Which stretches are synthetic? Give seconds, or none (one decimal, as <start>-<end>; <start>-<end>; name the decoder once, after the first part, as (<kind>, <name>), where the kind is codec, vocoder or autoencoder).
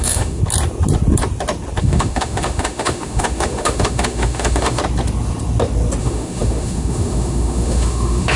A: 0.0-0.4 (autoencoder, DAC-VAE); 1.8-4.8; 6.0-8.4